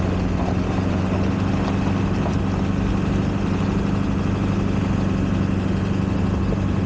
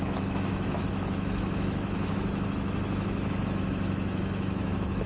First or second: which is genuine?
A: first